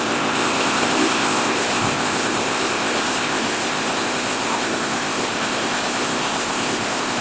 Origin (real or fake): fake